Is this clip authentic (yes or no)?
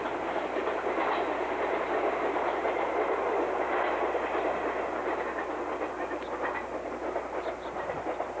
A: yes